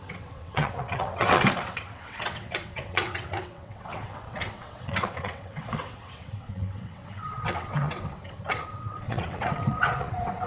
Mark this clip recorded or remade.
remade